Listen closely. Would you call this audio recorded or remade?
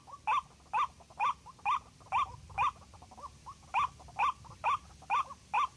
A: recorded